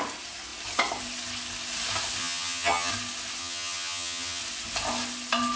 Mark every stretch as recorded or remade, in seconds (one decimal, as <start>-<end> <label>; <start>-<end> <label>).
0.0-2.2 recorded; 2.2-2.9 remade; 2.9-3.4 recorded; 3.4-4.4 remade; 4.4-5.6 recorded